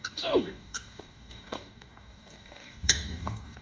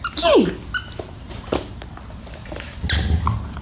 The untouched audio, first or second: second